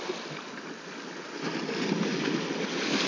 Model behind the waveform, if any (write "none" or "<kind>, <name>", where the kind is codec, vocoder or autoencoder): none